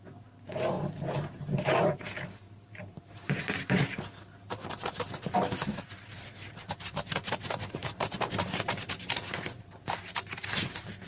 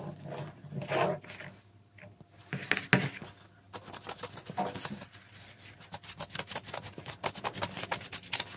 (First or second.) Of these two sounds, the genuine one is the second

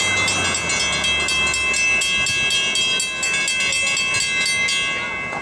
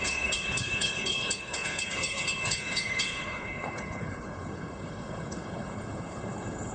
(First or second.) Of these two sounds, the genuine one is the first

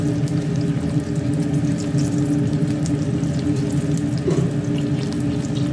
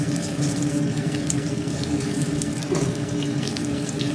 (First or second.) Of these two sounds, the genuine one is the first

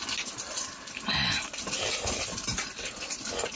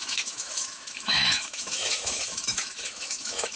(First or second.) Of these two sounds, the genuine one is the first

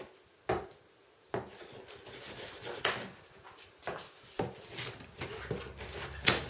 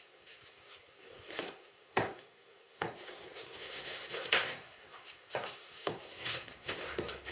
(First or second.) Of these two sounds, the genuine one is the first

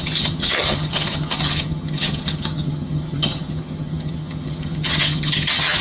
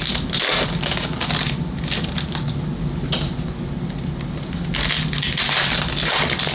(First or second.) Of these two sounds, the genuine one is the second